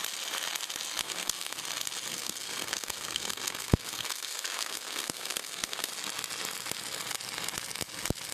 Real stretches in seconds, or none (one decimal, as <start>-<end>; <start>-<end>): 0.0-1.0; 1.6-2.1; 5.9-8.3